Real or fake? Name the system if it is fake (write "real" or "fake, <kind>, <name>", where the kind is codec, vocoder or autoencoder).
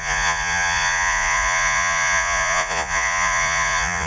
fake, vocoder, Vocos